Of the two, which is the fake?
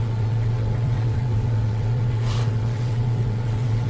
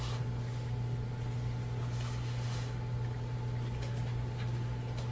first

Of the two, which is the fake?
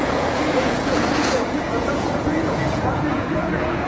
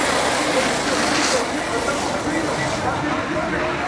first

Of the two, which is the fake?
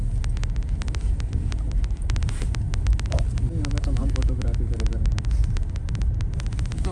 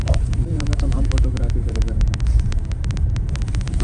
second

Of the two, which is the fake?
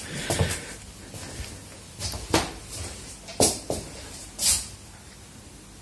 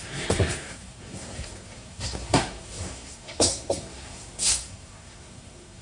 second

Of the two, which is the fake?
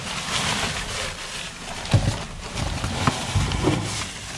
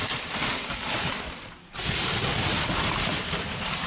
second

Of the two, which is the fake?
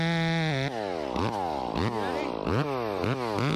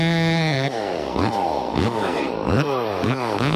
second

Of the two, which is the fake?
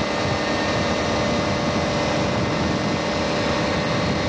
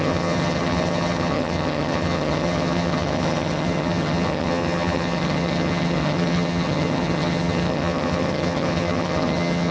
second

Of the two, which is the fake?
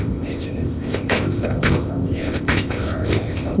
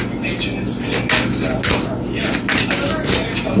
first